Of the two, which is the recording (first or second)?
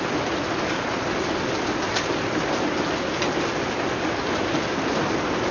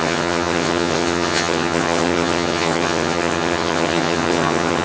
first